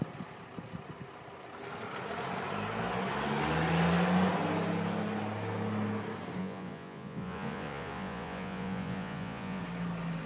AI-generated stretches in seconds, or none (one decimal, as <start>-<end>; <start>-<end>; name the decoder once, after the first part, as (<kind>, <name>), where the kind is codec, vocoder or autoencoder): 6.4-9.6 (vocoder, Vocos)

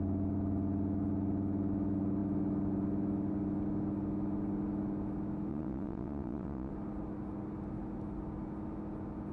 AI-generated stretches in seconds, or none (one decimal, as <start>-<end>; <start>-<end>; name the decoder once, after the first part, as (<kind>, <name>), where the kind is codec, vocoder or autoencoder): 5.5-6.7 (vocoder, Vocos)

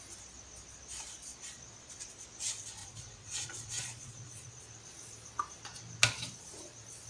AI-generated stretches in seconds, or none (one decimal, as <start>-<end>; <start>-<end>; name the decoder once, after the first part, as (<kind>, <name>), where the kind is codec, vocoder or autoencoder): 2.8-4.6 (vocoder, Vocos)

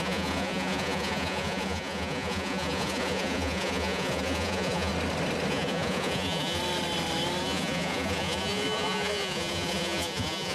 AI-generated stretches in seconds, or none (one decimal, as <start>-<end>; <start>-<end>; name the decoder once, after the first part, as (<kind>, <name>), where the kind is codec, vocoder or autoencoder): 0.0-4.9 (vocoder, Vocos); 5.5-6.6; 7.4-10.5

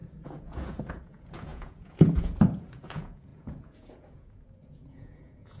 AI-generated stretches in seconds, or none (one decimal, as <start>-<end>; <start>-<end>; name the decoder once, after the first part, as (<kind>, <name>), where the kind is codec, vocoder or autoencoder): 0.0-5.6 (vocoder, Vocos)

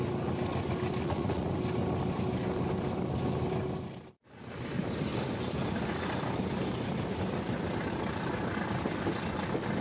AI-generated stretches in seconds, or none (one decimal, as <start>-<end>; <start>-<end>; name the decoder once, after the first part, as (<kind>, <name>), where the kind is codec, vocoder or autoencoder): 1.0-1.5 (vocoder, Vocos)